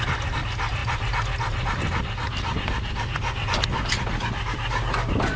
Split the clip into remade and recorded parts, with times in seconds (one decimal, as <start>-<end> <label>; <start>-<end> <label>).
0.0-5.4 recorded